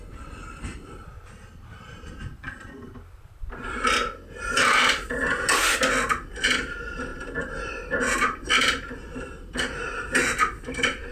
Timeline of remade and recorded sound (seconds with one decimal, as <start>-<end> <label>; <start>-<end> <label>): 0.0-0.7 recorded; 0.7-3.5 remade; 3.5-11.1 recorded